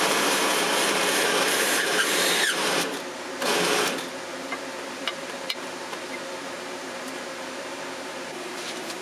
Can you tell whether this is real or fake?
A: fake